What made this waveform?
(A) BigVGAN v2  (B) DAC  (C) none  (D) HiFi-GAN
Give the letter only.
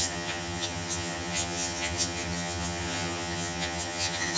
D